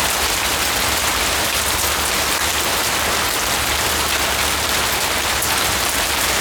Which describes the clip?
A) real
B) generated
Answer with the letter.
A